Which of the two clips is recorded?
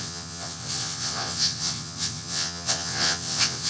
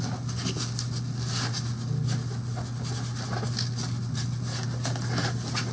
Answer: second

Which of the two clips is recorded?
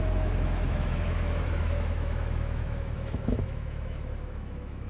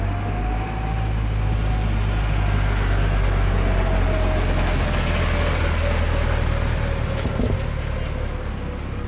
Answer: second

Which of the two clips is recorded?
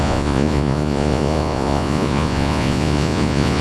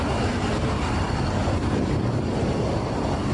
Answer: second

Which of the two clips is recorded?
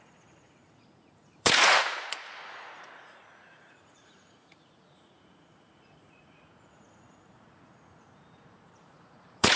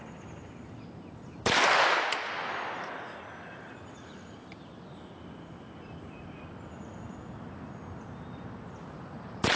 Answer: second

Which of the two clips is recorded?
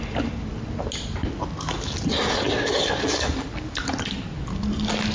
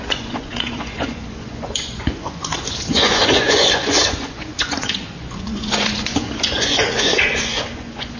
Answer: first